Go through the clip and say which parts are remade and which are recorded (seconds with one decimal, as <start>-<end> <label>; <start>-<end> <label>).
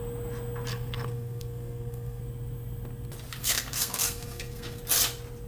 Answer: 0.0-0.7 recorded; 0.7-2.2 remade; 2.2-3.4 recorded; 3.4-4.8 remade; 4.8-5.5 recorded